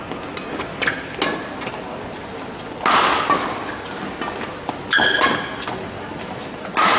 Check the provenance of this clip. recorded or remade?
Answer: recorded